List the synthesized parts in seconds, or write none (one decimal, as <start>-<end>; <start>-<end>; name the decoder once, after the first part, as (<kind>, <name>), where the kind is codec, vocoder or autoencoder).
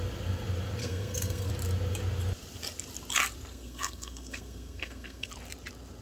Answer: 0.8-1.5 (codec, SNAC); 3.5-5.3